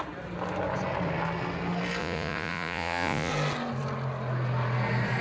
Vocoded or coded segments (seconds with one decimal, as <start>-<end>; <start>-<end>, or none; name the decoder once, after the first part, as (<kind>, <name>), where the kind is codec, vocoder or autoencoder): 2.0-3.3 (vocoder, Vocos)